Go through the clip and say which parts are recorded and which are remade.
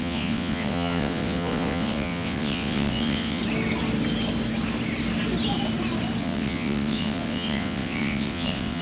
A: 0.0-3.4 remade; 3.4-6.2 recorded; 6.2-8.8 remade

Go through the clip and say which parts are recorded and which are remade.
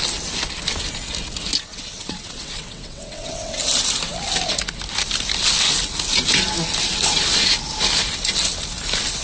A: 0.0-1.7 recorded; 1.7-3.6 remade; 3.6-9.2 recorded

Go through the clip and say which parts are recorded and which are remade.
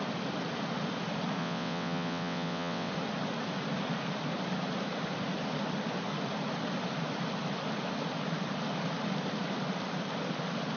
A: 0.0-1.4 recorded; 1.4-2.9 remade; 2.9-10.8 recorded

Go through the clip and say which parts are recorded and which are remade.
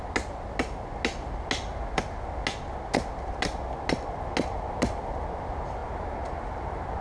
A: 0.0-7.0 recorded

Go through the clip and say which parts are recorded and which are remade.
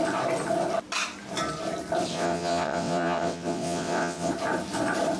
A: 0.0-2.1 recorded; 2.1-4.3 remade; 4.3-5.2 recorded